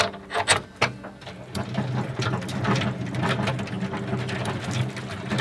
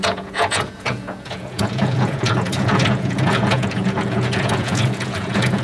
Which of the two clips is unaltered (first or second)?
first